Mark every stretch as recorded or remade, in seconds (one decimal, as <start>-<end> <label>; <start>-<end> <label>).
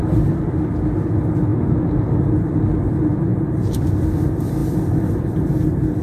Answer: 0.0-3.3 recorded; 3.3-3.8 remade; 3.8-4.6 recorded; 4.6-5.1 remade; 5.1-6.0 recorded